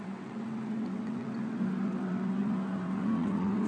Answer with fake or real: fake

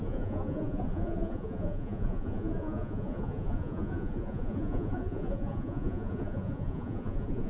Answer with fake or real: fake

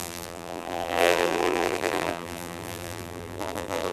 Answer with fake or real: fake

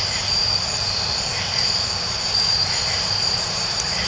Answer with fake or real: fake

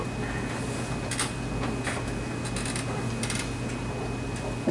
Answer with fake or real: real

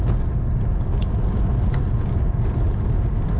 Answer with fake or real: real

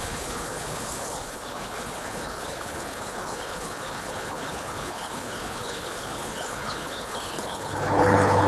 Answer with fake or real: fake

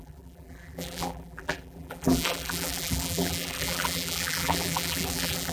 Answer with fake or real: fake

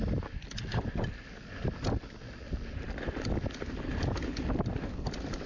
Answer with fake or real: real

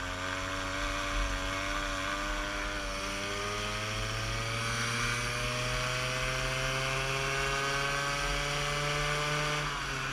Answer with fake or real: real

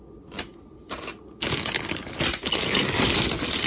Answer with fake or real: real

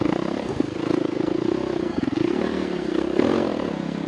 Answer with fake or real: fake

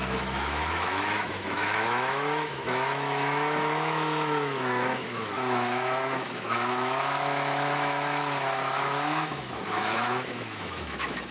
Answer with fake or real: fake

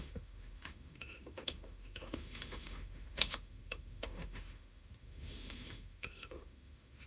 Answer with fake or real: fake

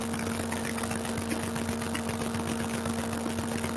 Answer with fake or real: real